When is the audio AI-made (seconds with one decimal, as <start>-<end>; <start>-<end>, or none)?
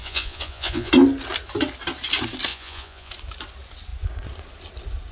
0.0-0.9; 2.5-3.1